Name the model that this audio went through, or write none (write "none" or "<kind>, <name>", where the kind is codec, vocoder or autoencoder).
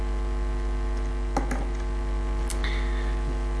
none